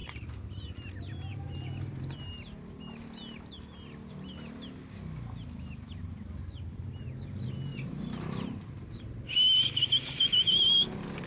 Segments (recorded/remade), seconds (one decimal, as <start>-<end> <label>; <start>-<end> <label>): 0.0-0.7 remade; 0.7-7.7 recorded; 7.7-9.0 remade; 9.0-11.3 recorded